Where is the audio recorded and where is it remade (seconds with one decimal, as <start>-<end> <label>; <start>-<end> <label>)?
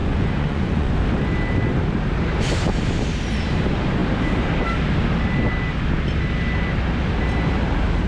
0.0-1.0 remade; 1.0-8.1 recorded